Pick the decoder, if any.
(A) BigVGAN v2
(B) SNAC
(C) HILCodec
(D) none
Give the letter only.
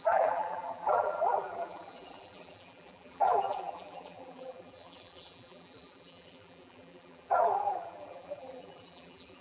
A